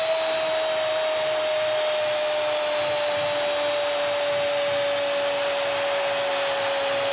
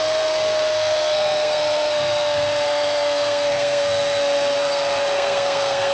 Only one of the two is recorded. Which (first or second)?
first